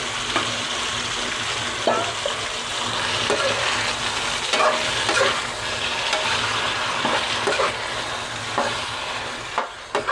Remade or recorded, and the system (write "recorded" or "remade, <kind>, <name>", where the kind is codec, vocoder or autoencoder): recorded